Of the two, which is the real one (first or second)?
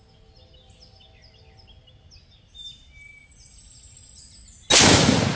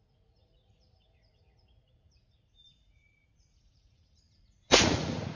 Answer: first